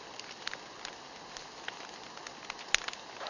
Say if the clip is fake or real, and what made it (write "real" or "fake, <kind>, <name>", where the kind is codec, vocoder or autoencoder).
real